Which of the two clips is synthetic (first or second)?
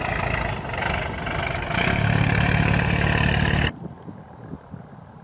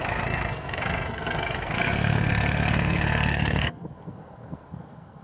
second